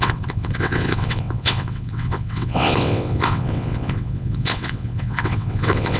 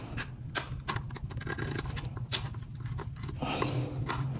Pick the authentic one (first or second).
second